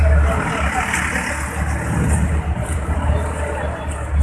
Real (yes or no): yes